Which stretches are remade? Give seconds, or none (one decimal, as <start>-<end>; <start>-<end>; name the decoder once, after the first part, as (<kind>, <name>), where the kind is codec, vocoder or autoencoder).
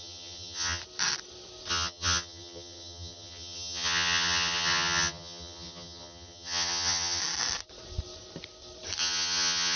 0.0-0.8 (vocoder, HiFi-GAN); 1.7-7.2; 9.0-9.8